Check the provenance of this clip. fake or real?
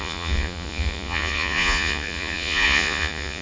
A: fake